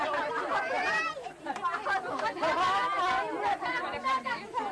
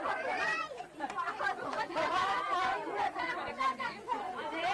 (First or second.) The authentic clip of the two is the first